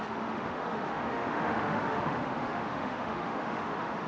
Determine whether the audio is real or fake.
fake